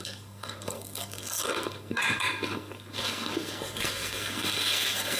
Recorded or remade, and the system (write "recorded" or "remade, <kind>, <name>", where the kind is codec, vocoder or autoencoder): remade, codec, SNAC